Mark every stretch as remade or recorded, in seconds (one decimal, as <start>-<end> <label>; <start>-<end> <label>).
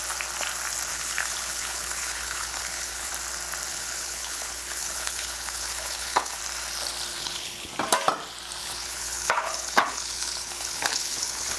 0.0-0.9 recorded; 0.9-3.1 remade; 3.1-3.7 recorded; 3.7-6.4 remade; 6.4-7.1 recorded; 7.1-7.7 remade; 7.7-8.6 recorded; 8.6-11.6 remade